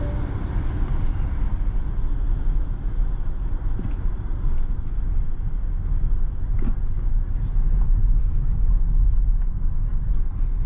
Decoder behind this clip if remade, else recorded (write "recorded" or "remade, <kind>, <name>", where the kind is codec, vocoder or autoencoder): recorded